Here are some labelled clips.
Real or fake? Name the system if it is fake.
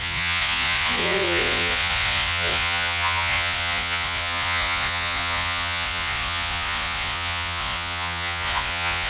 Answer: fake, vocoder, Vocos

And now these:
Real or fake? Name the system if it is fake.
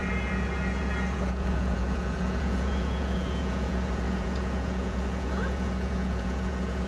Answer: fake, vocoder, Vocos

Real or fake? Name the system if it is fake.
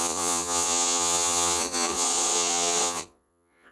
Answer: fake, vocoder, Vocos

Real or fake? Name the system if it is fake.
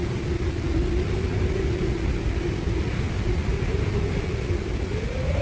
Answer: real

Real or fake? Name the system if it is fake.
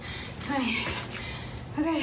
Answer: real